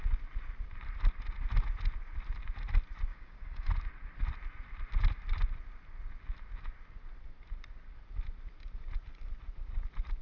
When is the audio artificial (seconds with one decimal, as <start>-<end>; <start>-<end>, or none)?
3.1-3.7